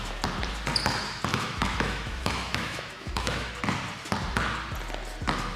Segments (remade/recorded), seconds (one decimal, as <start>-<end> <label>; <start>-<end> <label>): 0.0-1.3 recorded; 1.3-3.5 remade; 3.5-5.6 recorded